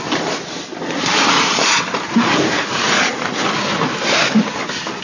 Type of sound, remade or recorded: recorded